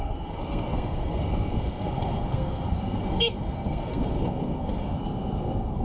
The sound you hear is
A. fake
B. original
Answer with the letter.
A